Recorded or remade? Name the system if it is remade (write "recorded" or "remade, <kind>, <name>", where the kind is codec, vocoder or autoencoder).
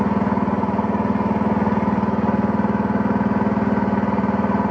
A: recorded